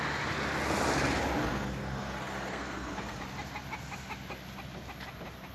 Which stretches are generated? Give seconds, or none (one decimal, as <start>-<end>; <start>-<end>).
1.4-3.2